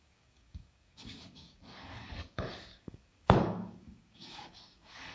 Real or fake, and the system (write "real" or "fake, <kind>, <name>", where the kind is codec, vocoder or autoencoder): fake, codec, DAC